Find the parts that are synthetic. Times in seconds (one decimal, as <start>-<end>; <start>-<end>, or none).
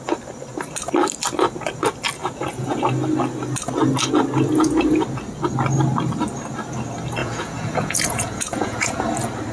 2.2-2.8; 7.2-9.0